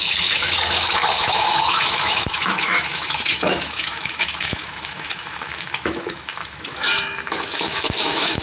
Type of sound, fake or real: fake